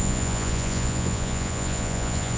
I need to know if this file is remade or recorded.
remade